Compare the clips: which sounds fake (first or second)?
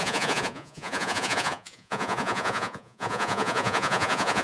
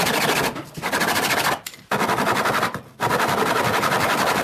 first